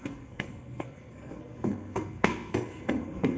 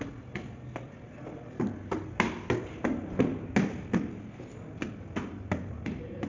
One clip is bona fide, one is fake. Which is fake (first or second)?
first